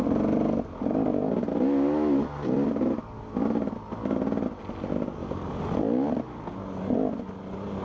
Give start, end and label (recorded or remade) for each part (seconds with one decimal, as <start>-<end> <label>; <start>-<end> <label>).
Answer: 0.0-7.8 recorded